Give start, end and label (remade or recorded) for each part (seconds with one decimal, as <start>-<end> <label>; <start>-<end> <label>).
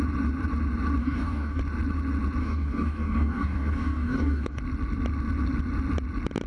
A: 0.0-1.0 recorded; 1.0-1.6 remade; 1.6-2.4 recorded; 2.4-4.6 remade; 4.6-6.5 recorded